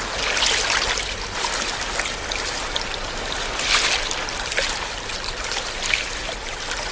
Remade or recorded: recorded